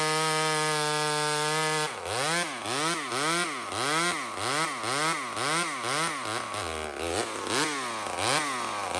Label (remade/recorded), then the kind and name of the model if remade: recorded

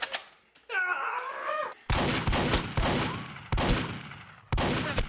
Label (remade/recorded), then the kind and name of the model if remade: recorded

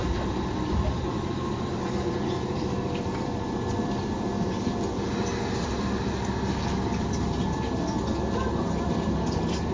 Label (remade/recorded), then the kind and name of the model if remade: remade, vocoder, BigVGAN v2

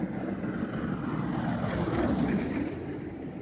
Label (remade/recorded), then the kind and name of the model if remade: recorded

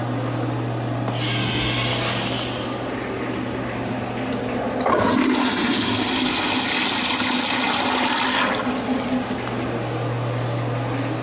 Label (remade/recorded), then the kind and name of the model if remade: recorded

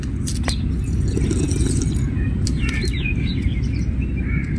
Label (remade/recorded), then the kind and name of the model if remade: recorded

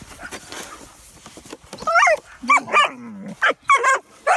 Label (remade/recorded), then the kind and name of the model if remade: recorded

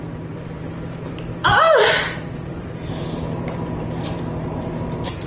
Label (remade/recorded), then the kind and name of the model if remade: remade, vocoder, BigVGAN v2